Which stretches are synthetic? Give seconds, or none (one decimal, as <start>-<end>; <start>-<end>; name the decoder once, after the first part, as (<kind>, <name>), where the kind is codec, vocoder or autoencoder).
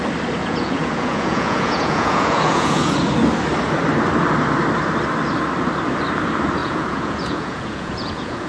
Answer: 0.4-2.9 (vocoder, Vocos); 6.6-8.5